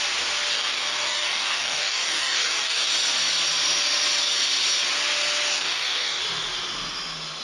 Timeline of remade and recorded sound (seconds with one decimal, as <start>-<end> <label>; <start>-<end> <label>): 0.0-0.5 recorded; 0.5-2.9 remade; 2.9-5.5 recorded; 5.5-6.2 remade; 6.2-7.4 recorded